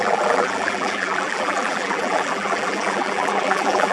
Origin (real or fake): fake